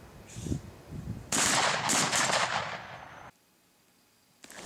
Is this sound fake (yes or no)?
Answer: no